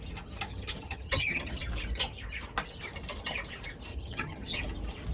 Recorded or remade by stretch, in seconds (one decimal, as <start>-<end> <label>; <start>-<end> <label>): 0.0-0.5 recorded; 0.5-1.7 remade; 1.7-3.9 recorded; 3.9-4.6 remade; 4.6-5.1 recorded